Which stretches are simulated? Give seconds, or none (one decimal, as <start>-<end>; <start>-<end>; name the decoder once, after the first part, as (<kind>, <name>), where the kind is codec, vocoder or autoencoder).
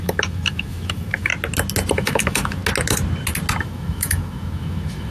0.0-1.3 (autoencoder, DAC-VAE); 1.9-2.6; 3.6-5.1